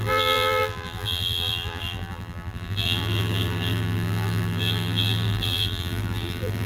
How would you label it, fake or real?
fake